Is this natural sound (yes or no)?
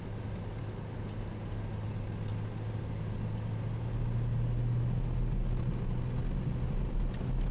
yes